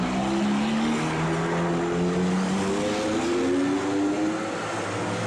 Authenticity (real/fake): real